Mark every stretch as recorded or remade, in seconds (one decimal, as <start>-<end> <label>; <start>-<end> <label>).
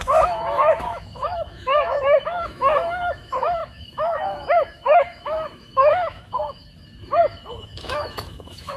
0.0-6.6 remade; 6.6-7.5 recorded; 7.5-8.8 remade